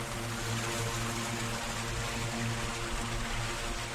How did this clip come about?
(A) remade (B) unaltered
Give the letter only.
B